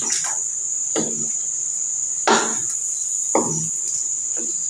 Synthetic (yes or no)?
no